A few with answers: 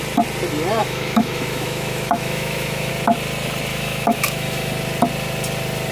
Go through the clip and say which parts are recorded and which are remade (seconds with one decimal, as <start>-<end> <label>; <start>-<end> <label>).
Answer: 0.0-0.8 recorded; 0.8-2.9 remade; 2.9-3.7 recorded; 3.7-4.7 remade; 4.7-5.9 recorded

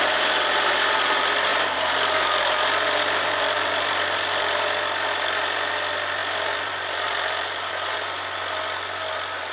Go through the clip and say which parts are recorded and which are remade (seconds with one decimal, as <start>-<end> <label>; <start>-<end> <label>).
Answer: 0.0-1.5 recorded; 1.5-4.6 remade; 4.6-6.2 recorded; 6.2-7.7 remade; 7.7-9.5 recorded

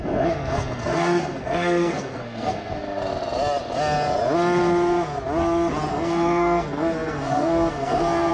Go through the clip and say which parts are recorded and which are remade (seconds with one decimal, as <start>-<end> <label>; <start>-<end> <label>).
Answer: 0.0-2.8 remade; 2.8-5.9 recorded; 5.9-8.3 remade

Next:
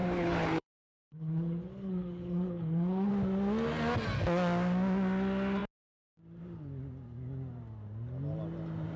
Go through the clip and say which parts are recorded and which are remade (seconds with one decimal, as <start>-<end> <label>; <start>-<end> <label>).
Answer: 0.0-3.1 remade; 3.1-9.0 recorded

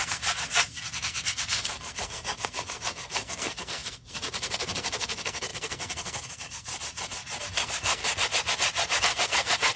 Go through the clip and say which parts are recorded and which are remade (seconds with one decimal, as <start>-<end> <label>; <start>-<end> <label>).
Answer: 0.0-6.7 remade; 6.7-7.4 recorded; 7.4-8.0 remade; 8.0-9.0 recorded; 9.0-9.8 remade

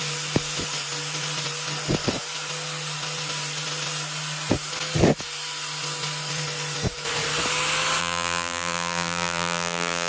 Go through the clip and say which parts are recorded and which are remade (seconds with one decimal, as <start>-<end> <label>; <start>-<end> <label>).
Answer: 0.0-8.0 recorded; 8.0-10.1 remade

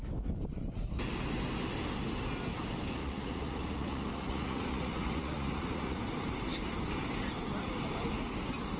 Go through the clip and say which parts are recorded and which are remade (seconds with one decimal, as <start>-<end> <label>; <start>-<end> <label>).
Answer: 0.0-3.0 recorded; 3.0-6.0 remade; 6.0-8.8 recorded